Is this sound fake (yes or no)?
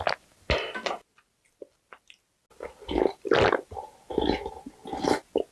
no